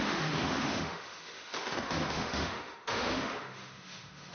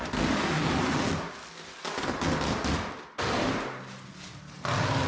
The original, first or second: second